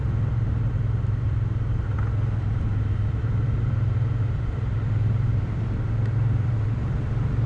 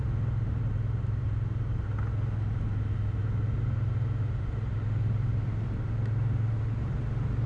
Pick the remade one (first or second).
first